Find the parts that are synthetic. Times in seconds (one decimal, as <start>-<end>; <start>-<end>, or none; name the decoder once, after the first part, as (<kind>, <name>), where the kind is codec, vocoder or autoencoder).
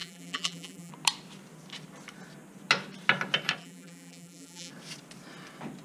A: 0.0-0.9 (vocoder, BigVGAN v2); 3.6-4.7